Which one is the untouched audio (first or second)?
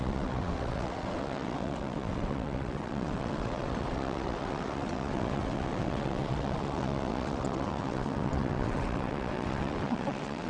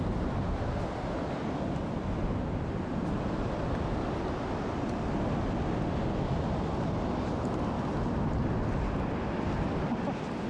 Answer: second